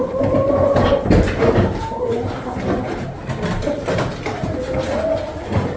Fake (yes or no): no